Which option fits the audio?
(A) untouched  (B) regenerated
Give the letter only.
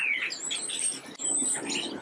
A